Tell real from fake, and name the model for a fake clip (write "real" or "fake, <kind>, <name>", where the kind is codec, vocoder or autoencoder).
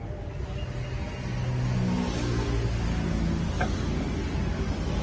real